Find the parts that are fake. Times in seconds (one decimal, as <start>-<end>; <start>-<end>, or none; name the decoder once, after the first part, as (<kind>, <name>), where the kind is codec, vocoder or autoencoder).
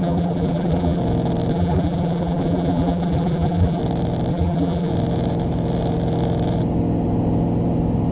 0.0-1.0 (vocoder, BigVGAN v2); 1.5-3.8; 4.3-4.9